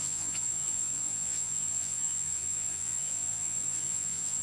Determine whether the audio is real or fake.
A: fake